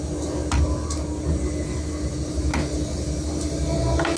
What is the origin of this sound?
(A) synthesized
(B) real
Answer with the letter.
B